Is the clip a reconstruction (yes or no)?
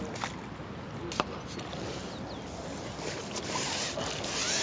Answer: no